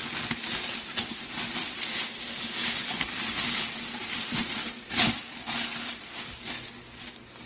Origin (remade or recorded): recorded